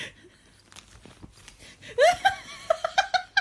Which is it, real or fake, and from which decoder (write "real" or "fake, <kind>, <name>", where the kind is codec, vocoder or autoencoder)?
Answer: real